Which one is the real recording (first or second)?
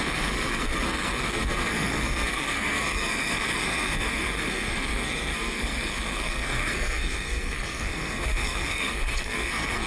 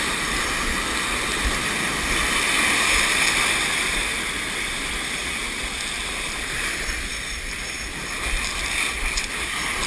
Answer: second